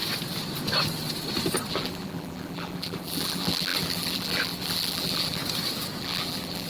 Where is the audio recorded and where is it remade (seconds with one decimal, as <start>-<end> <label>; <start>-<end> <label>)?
0.0-1.7 recorded; 1.7-5.4 remade; 5.4-6.0 recorded; 6.0-6.7 remade